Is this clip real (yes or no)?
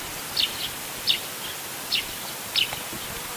yes